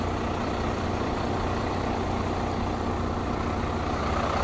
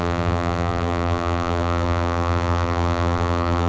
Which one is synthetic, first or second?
second